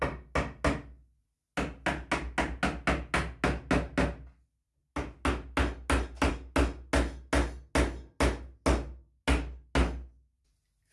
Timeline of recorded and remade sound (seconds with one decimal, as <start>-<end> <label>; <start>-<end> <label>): 0.0-10.9 recorded